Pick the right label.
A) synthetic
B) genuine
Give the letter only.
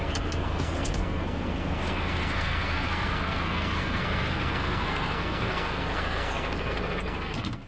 A